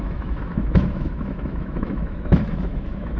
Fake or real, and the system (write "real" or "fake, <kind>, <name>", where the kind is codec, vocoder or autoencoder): fake, autoencoder, DAC-VAE